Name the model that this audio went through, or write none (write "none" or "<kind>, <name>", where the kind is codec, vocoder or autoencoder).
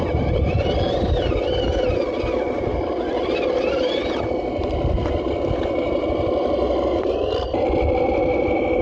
none